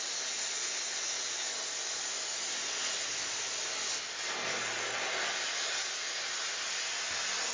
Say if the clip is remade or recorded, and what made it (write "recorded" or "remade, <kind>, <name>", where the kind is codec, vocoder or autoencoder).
recorded